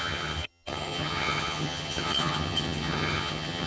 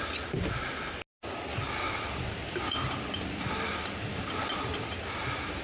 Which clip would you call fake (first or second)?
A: first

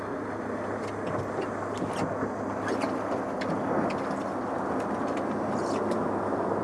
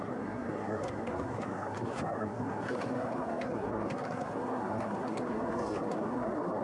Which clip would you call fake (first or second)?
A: second